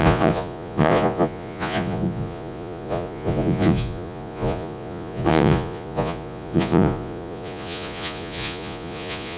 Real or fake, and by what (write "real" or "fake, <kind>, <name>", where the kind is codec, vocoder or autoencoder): fake, vocoder, Vocos